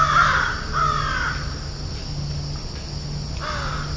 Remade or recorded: recorded